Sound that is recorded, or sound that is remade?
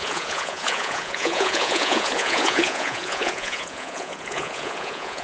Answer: remade